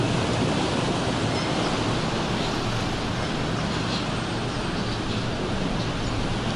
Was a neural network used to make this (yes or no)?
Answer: no